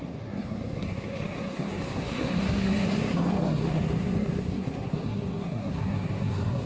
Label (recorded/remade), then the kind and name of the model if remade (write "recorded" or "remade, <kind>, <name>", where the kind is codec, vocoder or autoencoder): remade, codec, SNAC